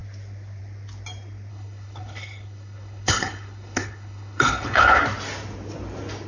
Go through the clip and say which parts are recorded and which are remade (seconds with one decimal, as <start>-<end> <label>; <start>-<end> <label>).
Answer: 0.0-1.5 recorded; 1.5-5.0 remade; 5.0-6.3 recorded